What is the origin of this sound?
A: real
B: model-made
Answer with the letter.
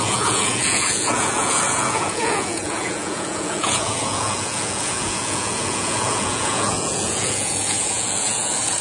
B